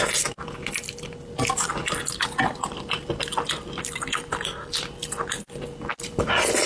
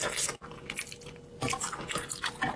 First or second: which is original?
second